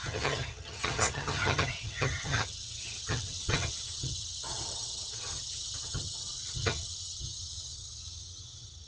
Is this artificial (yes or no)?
yes